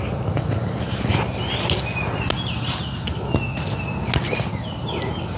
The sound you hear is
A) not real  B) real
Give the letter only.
B